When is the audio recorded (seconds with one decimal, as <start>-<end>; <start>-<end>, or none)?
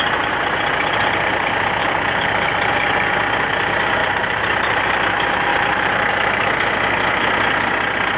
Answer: 0.0-1.8; 2.7-4.0; 4.9-5.5; 6.1-8.2